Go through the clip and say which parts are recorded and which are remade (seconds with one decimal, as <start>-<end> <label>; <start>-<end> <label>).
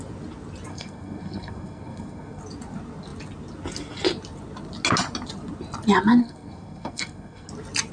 0.0-0.7 recorded; 0.7-2.4 remade; 2.4-6.2 recorded; 6.2-7.5 remade; 7.5-7.9 recorded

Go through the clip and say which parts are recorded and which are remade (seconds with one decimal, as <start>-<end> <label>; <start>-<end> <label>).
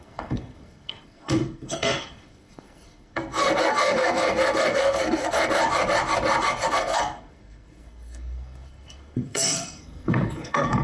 0.0-5.6 remade; 5.6-6.7 recorded; 6.7-10.8 remade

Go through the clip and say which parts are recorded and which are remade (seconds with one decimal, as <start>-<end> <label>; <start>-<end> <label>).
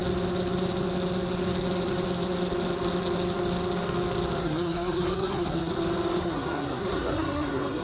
0.0-4.4 recorded; 4.4-5.7 remade; 5.7-6.2 recorded; 6.2-7.8 remade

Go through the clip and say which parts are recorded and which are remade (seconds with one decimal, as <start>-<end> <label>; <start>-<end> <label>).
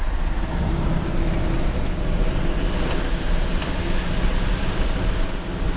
0.0-5.8 recorded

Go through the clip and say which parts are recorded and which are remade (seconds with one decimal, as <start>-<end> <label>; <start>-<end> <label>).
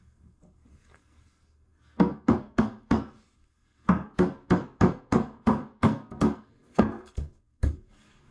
0.0-8.3 remade